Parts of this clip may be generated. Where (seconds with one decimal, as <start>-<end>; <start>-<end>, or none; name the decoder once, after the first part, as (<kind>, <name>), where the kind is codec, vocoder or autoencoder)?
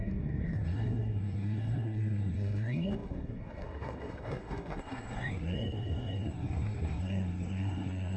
0.0-8.2 (codec, SNAC)